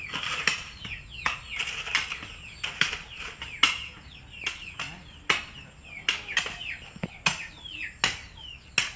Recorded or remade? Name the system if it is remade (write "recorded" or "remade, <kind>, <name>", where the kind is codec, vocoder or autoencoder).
recorded